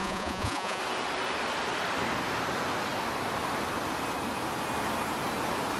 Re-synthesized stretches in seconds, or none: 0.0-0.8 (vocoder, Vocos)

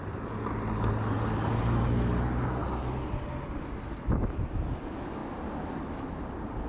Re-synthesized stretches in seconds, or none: none